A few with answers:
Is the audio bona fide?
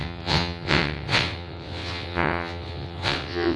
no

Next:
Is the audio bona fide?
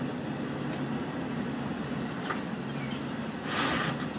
yes